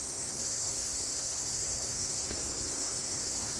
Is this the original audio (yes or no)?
no